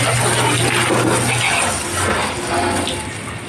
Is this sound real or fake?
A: real